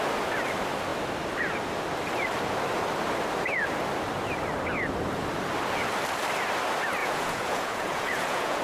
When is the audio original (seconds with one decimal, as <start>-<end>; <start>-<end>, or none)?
0.0-7.0